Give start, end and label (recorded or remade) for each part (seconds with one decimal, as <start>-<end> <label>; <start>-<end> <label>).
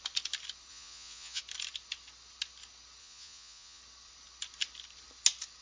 0.0-0.7 recorded; 0.7-1.4 remade; 1.4-3.0 recorded; 3.0-3.8 remade; 3.8-5.6 recorded